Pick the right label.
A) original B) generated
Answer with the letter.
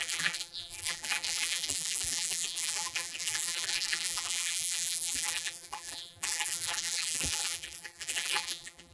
B